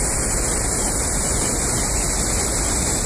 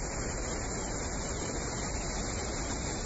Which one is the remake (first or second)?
second